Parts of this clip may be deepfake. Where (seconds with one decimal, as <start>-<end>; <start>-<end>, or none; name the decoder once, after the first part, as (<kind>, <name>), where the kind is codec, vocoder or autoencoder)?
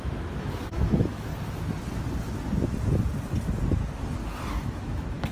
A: 0.0-1.3 (autoencoder, DAC-VAE); 4.5-5.3